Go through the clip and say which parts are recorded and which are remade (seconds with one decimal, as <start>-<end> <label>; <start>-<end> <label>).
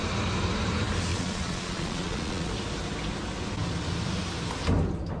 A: 0.0-1.1 recorded; 1.1-2.5 remade; 2.5-5.2 recorded